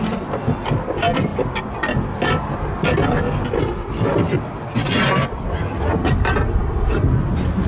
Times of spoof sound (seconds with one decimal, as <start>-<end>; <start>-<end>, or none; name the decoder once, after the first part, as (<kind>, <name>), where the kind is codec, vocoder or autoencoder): none